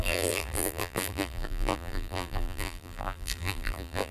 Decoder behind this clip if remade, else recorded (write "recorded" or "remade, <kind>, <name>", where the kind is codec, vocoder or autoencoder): remade, vocoder, BigVGAN v2